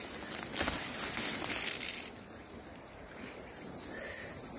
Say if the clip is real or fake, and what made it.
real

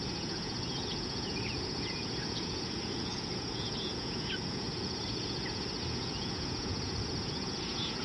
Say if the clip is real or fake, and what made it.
fake, vocoder, Vocos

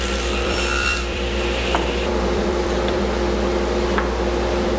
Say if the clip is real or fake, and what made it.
fake, vocoder, BigVGAN v2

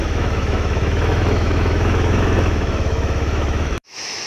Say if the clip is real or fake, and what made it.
fake, autoencoder, DAC-VAE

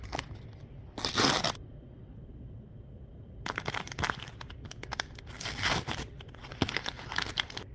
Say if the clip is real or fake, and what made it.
fake, vocoder, BigVGAN v2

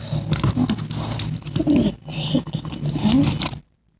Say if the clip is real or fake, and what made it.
real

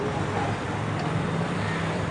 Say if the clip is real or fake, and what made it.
real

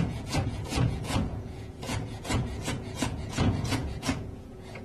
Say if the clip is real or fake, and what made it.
fake, vocoder, Vocos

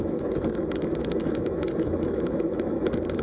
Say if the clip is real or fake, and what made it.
fake, autoencoder, DAC-VAE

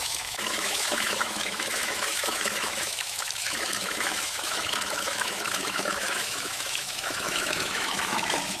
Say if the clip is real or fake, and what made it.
fake, autoencoder, DAC-VAE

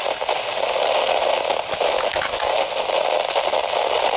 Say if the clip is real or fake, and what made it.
real